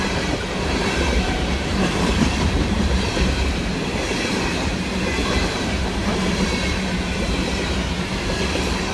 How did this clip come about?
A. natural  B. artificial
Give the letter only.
B